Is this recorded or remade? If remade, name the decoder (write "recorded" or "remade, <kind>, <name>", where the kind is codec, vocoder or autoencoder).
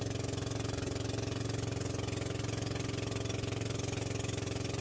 recorded